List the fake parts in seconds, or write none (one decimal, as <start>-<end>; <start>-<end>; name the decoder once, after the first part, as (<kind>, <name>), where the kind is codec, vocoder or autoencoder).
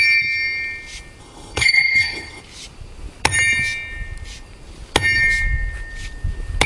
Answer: 1.2-2.4 (codec, HILCodec)